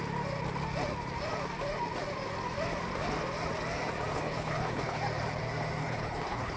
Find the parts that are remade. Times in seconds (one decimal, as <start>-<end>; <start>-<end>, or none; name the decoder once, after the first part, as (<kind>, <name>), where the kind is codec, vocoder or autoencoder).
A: 4.1-5.0 (codec, HILCodec); 5.8-6.6